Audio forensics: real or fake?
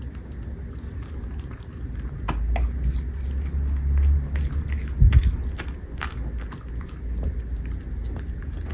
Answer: real